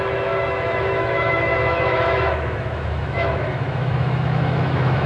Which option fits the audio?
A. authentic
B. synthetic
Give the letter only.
B